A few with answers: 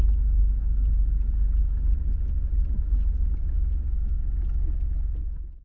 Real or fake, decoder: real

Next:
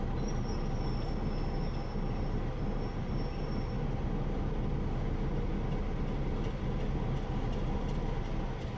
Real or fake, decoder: real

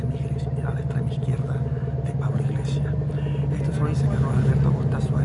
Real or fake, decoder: real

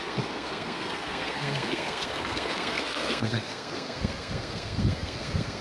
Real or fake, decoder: fake, codec, SNAC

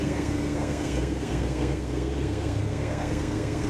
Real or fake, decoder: fake, codec, SNAC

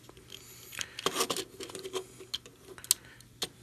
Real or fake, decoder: real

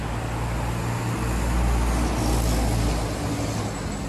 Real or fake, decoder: real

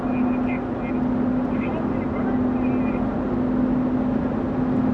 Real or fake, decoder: real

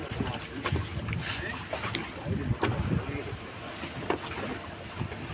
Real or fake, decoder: real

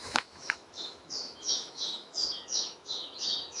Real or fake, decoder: fake, autoencoder, DAC-VAE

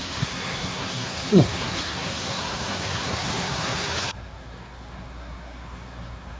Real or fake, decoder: fake, codec, SNAC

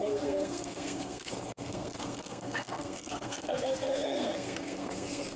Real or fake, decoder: fake, codec, SNAC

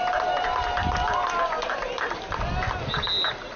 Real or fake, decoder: real